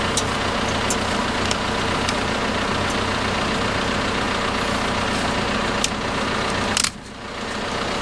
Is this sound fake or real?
real